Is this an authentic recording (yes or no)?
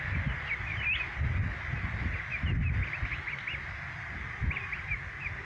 yes